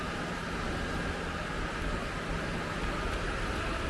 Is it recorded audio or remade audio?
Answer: recorded